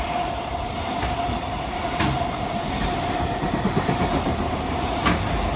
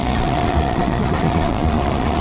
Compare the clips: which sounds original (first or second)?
first